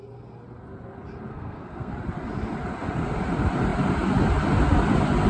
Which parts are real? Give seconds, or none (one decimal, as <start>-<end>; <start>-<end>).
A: 0.0-1.3; 1.9-5.3